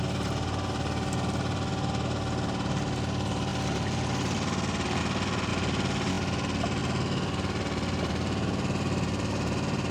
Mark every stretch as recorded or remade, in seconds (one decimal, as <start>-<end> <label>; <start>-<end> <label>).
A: 0.0-9.9 recorded